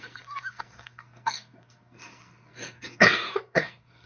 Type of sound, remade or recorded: remade